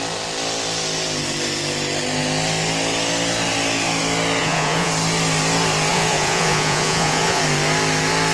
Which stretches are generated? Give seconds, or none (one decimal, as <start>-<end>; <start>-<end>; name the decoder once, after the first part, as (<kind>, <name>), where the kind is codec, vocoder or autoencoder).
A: 4.4-4.9 (vocoder, Vocos); 5.9-7.4